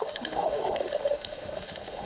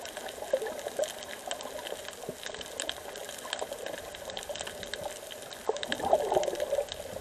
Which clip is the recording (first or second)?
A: second